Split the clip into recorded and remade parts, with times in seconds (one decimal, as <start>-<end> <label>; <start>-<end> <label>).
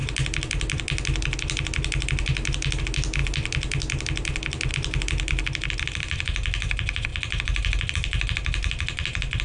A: 0.0-9.4 recorded